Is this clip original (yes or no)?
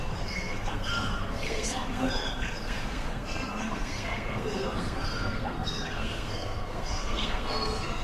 no